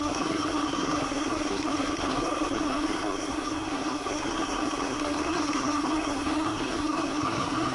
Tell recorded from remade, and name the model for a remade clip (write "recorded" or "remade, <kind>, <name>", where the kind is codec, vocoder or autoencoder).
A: remade, codec, SNAC